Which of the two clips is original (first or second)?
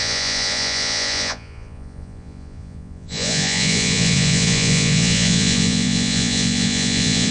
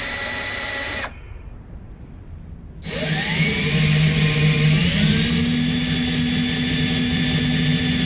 second